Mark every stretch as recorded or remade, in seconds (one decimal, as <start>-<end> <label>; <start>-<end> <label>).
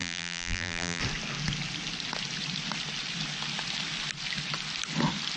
0.0-1.0 remade; 1.0-5.4 recorded